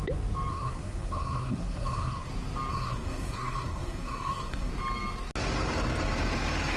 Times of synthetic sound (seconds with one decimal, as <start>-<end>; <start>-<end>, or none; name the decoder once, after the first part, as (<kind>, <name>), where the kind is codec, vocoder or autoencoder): 0.5-2.3 (codec, SNAC); 2.7-4.7